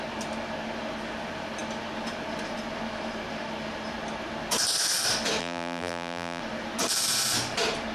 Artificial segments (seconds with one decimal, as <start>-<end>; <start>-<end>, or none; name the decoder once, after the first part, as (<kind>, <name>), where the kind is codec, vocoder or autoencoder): 5.4-6.4 (vocoder, BigVGAN v2)